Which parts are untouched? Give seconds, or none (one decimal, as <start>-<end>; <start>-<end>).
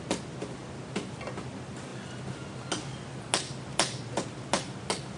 0.0-5.2